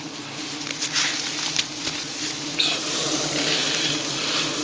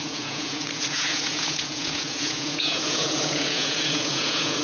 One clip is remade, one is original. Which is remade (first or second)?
second